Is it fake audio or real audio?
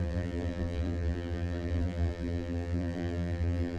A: fake